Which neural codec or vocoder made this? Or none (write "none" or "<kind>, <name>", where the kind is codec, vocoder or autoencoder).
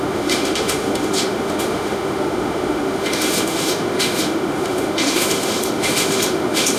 autoencoder, DAC-VAE